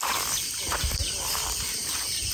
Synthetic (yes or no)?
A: no